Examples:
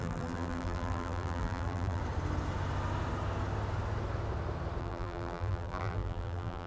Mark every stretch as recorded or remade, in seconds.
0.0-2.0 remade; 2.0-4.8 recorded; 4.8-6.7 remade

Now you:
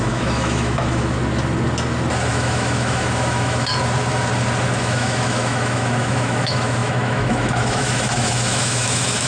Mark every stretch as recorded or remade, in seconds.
0.0-1.2 remade; 1.2-2.3 recorded; 2.3-3.7 remade; 3.7-4.8 recorded; 4.8-9.3 remade

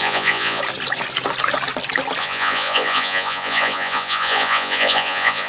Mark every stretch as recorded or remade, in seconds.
0.0-0.6 remade; 0.6-2.2 recorded; 2.2-5.5 remade

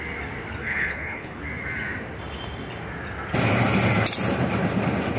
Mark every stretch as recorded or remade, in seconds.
0.0-0.6 recorded; 0.6-1.4 remade; 1.4-5.2 recorded